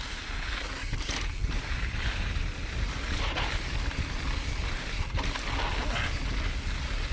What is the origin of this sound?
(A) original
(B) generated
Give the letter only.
A